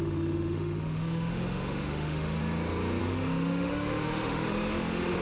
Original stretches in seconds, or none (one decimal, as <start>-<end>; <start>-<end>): 2.4-3.0